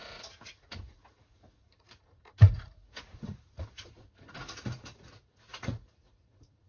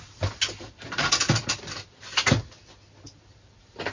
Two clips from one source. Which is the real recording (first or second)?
second